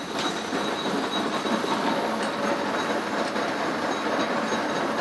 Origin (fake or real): real